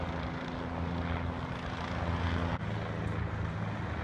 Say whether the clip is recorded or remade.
recorded